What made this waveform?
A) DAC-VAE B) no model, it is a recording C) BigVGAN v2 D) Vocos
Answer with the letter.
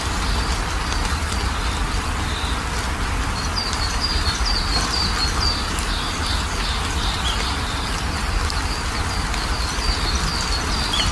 B